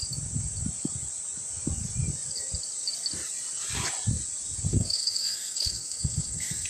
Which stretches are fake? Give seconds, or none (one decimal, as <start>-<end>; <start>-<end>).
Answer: 4.7-6.7